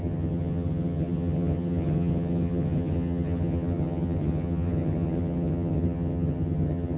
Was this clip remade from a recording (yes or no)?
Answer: yes